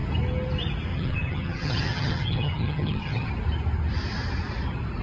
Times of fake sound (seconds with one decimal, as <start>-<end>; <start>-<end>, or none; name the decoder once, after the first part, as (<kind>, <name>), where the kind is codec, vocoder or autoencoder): 0.9-3.3 (vocoder, HiFi-GAN)